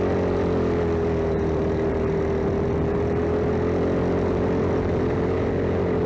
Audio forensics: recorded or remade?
recorded